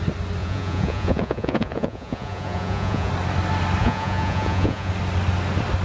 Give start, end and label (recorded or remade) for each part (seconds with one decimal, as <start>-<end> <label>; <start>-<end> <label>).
0.0-0.4 recorded; 0.4-3.1 remade; 3.1-3.8 recorded; 3.8-4.9 remade; 4.9-5.8 recorded